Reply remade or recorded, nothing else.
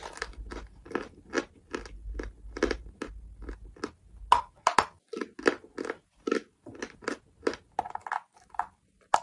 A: recorded